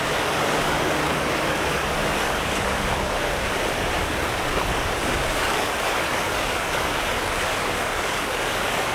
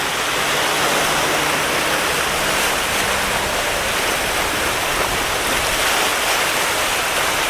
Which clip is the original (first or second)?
second